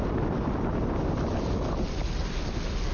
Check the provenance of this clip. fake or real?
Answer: real